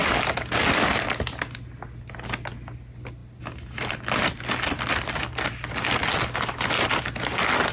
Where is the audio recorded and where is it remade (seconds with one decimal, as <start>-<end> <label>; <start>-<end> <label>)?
0.0-7.7 recorded